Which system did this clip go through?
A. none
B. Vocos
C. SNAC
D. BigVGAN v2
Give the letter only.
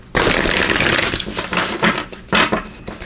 A